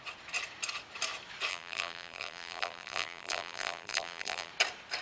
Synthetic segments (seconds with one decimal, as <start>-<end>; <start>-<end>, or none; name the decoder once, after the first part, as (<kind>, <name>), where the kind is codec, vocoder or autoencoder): 1.5-4.5 (vocoder, BigVGAN v2)